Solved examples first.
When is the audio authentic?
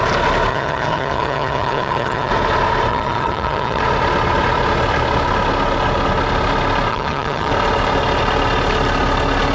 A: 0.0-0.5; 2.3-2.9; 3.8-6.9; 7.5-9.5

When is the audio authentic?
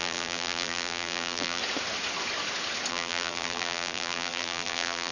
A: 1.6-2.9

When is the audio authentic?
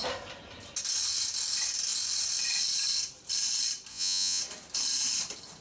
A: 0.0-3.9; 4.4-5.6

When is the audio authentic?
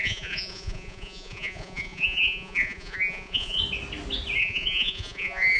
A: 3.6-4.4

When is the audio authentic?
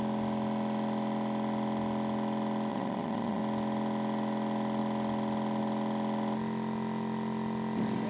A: 0.0-2.7; 3.4-8.1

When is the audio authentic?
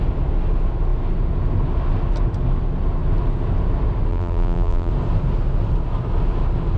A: 0.0-4.1; 4.9-6.8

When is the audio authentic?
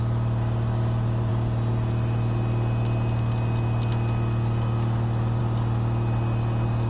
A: 0.0-6.9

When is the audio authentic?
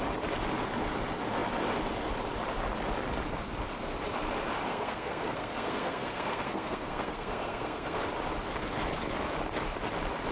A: 0.0-4.7; 8.0-10.3